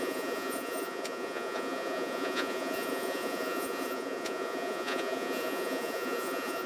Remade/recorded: remade